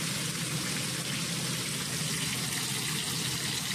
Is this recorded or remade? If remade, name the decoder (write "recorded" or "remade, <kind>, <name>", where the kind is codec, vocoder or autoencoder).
recorded